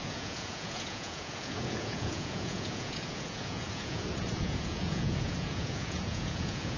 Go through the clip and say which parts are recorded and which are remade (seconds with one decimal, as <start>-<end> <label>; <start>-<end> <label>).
0.0-6.8 remade